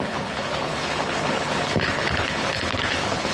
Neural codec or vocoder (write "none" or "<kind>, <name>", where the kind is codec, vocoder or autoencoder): codec, HILCodec